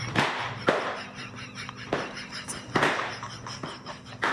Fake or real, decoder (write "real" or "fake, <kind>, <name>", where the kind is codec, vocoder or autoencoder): real